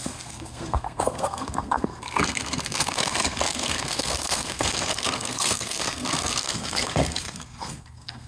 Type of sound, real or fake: fake